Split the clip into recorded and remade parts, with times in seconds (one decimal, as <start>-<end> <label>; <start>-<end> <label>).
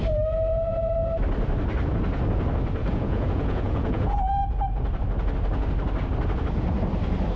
0.0-2.8 recorded; 2.8-4.4 remade; 4.4-7.4 recorded